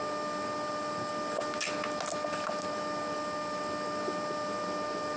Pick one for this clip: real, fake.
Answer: real